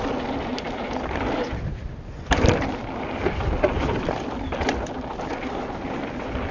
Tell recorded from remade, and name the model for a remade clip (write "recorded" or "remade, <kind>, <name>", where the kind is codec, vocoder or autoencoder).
recorded